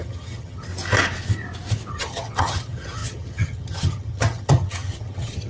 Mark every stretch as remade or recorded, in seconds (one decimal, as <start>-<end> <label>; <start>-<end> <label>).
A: 0.0-0.7 remade; 0.7-1.9 recorded; 1.9-5.5 remade